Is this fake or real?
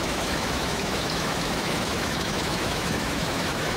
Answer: fake